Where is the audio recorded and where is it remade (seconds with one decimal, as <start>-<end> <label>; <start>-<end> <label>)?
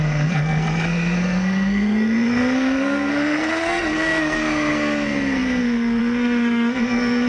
0.0-7.3 remade